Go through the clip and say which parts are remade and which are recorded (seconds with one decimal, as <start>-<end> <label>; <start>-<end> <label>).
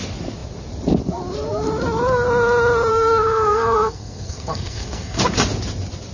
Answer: 0.0-2.9 recorded; 2.9-5.2 remade; 5.2-6.1 recorded